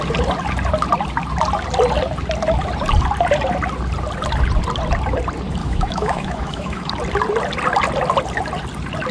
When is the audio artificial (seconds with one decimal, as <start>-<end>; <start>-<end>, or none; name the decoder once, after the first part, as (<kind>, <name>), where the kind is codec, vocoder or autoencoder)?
5.6-6.9 (autoencoder, DAC-VAE)